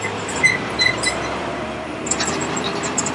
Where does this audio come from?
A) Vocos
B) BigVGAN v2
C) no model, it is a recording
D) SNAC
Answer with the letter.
B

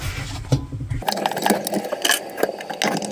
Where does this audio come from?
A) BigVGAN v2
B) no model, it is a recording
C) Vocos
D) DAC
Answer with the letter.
B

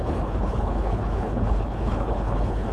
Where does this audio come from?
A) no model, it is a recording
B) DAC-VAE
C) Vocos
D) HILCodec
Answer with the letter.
D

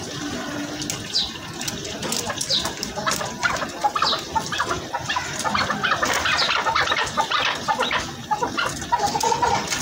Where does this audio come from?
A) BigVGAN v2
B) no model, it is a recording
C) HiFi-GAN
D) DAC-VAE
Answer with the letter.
B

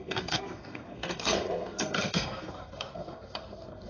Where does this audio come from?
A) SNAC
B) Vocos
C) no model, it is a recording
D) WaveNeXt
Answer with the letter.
A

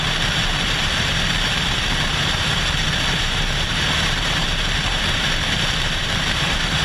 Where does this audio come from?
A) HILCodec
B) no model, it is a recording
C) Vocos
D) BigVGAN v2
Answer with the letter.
D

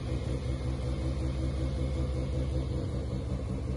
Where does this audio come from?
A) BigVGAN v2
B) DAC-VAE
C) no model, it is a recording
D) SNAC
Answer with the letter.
C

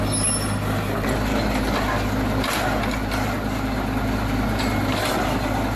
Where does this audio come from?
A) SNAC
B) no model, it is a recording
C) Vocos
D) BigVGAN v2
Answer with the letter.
B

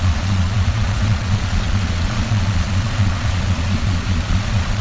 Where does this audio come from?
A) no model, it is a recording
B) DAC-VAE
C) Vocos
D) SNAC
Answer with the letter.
C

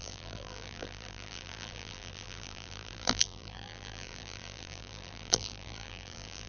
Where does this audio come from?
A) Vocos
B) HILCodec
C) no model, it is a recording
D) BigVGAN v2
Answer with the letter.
D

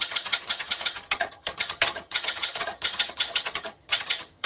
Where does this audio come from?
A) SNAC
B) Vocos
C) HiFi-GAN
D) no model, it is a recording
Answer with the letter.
C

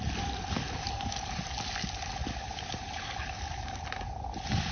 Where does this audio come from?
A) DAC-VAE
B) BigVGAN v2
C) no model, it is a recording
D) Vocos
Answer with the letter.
C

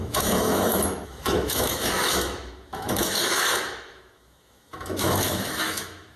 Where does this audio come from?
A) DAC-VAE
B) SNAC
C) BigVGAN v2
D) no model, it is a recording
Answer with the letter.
A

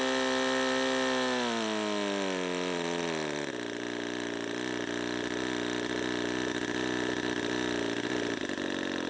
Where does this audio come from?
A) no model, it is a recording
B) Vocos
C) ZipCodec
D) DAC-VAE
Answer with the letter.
A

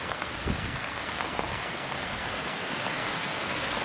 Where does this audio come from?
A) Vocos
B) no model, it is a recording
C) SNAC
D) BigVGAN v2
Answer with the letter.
C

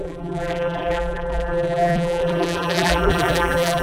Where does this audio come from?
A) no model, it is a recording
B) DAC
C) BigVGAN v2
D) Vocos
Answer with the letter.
C